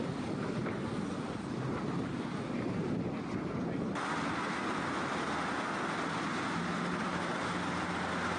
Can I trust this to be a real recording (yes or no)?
yes